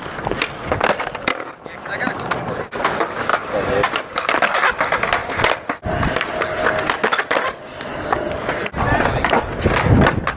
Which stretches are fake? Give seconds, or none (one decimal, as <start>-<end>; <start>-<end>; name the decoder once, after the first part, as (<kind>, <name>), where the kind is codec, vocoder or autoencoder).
none